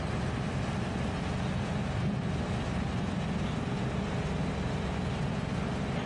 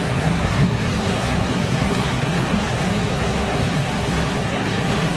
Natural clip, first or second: first